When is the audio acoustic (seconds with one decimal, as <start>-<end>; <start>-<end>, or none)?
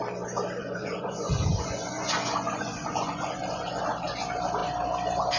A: 0.0-0.6; 3.8-5.4